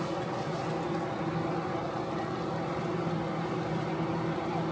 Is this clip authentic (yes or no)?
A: yes